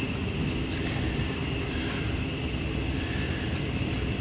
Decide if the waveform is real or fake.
real